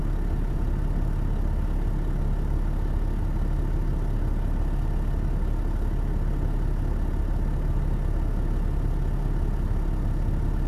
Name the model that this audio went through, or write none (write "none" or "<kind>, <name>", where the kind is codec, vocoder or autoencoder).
none